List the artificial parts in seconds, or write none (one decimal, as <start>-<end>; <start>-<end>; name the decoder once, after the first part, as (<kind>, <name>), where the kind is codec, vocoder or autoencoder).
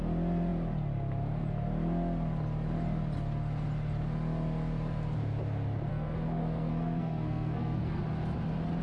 5.9-8.0 (codec, SNAC)